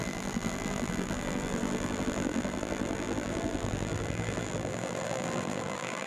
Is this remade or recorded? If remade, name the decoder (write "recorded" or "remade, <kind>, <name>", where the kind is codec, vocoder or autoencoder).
remade, vocoder, BigVGAN v2